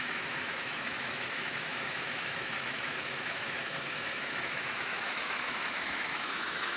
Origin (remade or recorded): remade